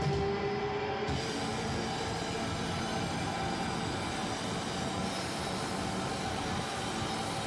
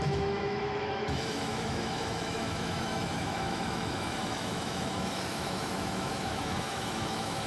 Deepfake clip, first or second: second